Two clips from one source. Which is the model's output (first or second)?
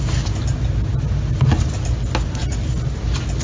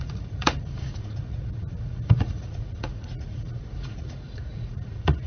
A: second